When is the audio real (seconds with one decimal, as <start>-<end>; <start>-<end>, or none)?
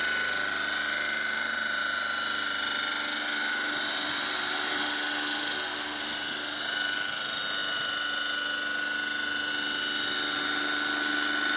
0.0-11.6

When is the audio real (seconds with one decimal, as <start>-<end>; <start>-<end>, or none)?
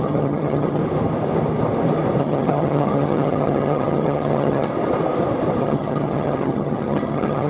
0.8-2.2; 4.7-5.6